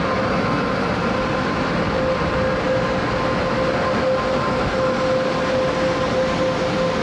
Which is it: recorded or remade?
recorded